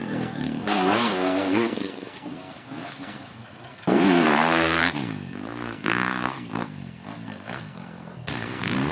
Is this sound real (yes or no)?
no